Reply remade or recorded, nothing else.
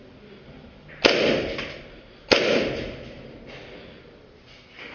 recorded